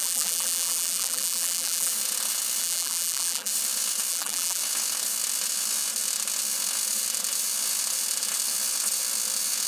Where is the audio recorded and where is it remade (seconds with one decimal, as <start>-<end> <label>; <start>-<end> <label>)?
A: 0.0-1.9 remade; 1.9-2.6 recorded; 2.6-3.5 remade; 3.5-4.1 recorded; 4.1-4.6 remade; 4.6-9.7 recorded

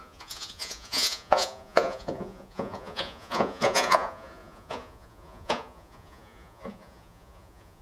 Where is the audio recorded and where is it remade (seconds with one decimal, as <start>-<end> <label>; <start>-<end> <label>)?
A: 0.0-7.8 remade

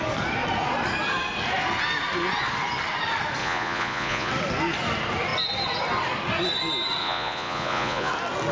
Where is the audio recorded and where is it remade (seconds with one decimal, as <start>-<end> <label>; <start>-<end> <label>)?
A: 0.0-3.4 recorded; 3.4-4.3 remade; 4.3-7.0 recorded; 7.0-8.1 remade; 8.1-8.5 recorded

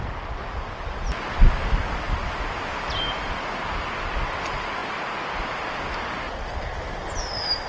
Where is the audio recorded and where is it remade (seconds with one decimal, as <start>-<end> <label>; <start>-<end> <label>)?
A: 0.0-7.7 recorded

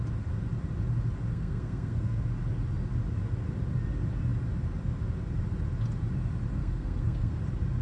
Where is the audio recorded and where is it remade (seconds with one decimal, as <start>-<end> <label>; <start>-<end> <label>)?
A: 0.0-1.3 recorded; 1.3-2.2 remade; 2.2-6.6 recorded; 6.6-7.3 remade; 7.3-7.8 recorded